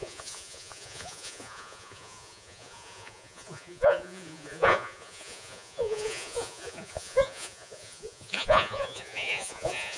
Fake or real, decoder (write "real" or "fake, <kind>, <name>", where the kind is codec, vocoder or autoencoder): fake, vocoder, Vocos